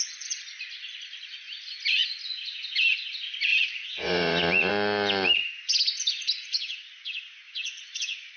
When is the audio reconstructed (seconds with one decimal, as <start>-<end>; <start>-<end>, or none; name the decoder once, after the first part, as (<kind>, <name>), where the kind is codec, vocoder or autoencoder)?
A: 3.5-4.7 (vocoder, Vocos)